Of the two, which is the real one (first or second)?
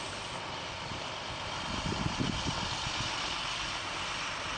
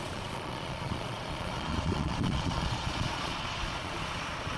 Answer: first